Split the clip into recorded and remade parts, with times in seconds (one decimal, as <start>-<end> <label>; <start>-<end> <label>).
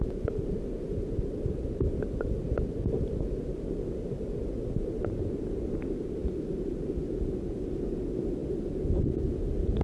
0.0-9.8 recorded